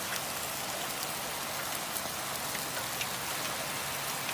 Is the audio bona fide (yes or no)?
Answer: yes